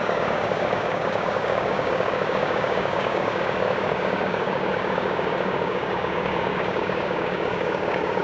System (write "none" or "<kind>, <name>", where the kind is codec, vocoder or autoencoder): codec, DAC